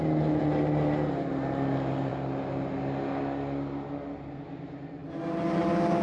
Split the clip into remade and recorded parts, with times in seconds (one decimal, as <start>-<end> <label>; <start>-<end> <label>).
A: 0.0-6.0 recorded